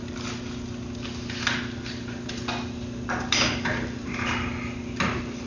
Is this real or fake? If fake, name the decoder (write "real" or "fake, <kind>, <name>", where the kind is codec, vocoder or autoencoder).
real